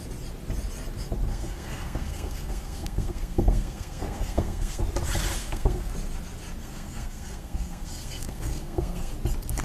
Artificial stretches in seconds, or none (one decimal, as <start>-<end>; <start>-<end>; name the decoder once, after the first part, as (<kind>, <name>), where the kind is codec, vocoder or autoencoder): 1.3-4.8 (codec, SNAC); 5.4-5.9; 6.6-9.1